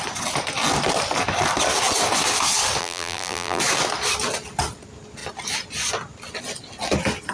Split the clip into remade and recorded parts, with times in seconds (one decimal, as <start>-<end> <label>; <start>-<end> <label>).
0.0-2.8 recorded; 2.8-3.6 remade; 3.6-7.3 recorded